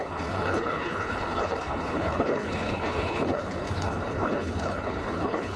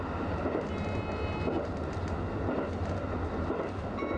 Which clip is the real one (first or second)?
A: second